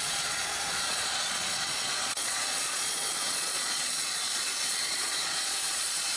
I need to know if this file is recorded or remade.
remade